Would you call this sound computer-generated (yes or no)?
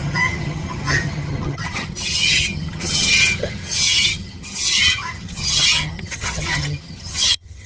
yes